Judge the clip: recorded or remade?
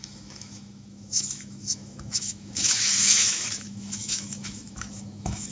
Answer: remade